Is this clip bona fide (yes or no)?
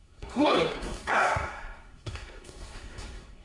no